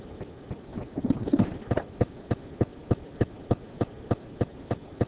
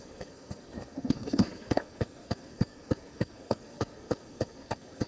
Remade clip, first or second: second